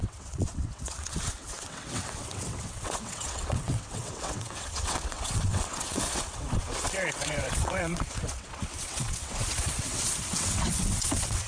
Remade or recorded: remade